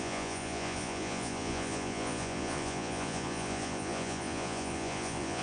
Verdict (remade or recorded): remade